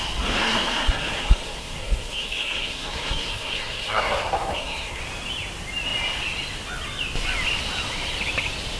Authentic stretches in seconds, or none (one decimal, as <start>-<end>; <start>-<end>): 0.0-0.4; 5.0-8.8